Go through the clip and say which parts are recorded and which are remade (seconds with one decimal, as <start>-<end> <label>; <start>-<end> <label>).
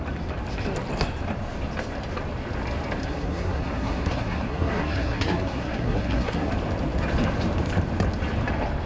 0.0-3.0 recorded; 3.0-6.5 remade; 6.5-8.9 recorded